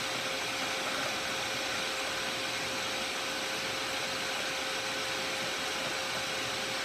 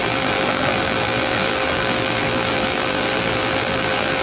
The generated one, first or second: second